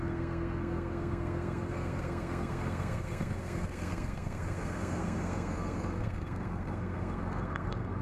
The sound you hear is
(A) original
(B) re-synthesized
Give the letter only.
B